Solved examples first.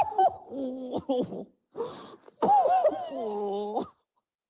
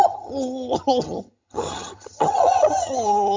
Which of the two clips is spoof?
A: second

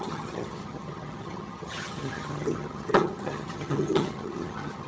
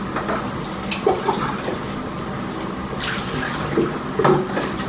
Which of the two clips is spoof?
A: first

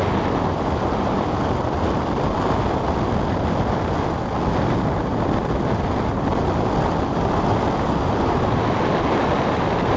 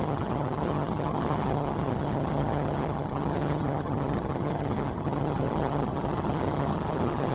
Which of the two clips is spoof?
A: second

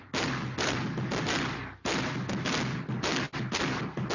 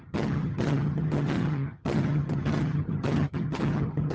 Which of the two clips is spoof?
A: second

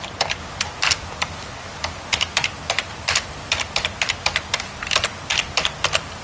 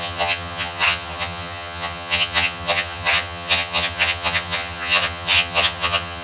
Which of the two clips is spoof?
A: second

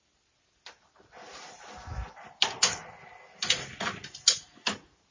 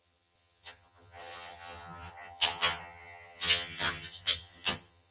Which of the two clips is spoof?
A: second